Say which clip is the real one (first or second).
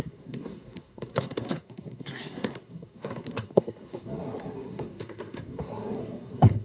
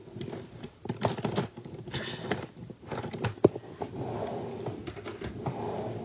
second